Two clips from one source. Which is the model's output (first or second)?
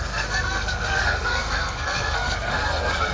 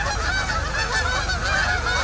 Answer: first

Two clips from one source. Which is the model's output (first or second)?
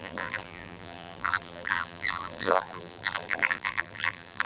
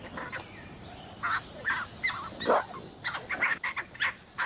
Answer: first